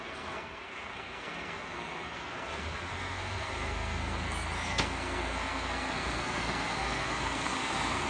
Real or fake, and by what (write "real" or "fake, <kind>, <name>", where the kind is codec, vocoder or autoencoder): fake, codec, SNAC